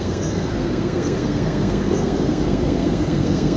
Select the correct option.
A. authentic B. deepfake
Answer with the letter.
B